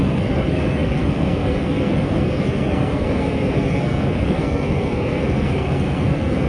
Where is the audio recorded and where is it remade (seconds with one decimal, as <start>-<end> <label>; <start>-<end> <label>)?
0.0-6.5 remade